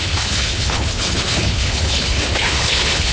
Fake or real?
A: fake